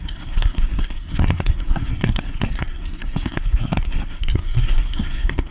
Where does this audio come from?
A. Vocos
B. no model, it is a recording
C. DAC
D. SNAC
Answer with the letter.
D